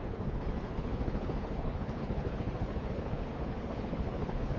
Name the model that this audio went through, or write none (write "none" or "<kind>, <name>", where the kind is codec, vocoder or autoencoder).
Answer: codec, HILCodec